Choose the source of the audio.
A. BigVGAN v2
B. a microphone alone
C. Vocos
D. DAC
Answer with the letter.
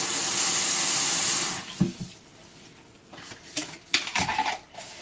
B